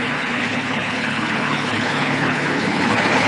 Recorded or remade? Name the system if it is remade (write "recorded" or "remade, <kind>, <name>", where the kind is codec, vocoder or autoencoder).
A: remade, codec, HILCodec